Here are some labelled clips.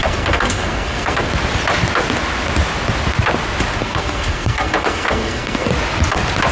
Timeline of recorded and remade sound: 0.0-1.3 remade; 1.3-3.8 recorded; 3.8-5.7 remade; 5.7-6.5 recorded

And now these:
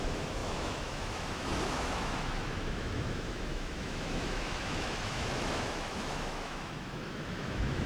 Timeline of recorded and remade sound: 0.0-7.9 remade

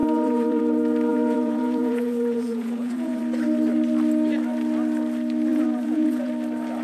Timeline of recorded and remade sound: 0.0-0.6 remade; 0.6-1.1 recorded; 1.1-3.2 remade; 3.2-5.5 recorded; 5.5-6.3 remade; 6.3-6.8 recorded

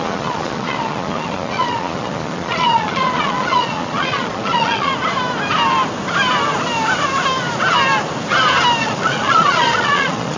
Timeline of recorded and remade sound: 0.0-4.9 remade; 4.9-8.8 recorded; 8.8-10.4 remade

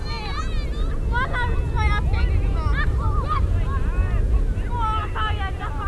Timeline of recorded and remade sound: 0.0-5.9 recorded

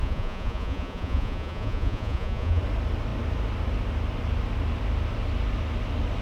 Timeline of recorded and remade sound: 0.0-2.6 remade; 2.6-6.2 recorded

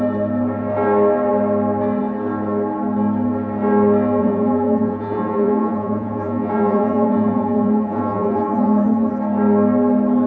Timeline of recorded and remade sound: 0.0-4.2 recorded; 4.2-9.1 remade; 9.1-10.3 recorded

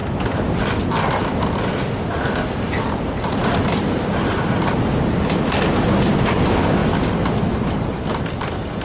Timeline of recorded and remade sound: 0.0-8.8 recorded